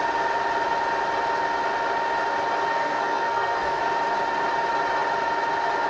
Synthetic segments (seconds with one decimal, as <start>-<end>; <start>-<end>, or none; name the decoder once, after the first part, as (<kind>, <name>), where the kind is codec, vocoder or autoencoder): 2.7-3.8 (codec, SNAC)

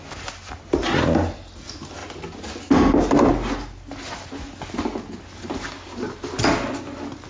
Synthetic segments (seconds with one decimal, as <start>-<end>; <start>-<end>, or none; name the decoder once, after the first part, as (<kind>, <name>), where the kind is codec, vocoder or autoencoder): none